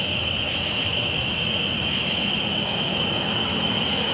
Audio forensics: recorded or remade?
remade